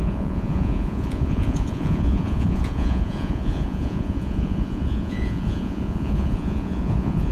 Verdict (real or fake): fake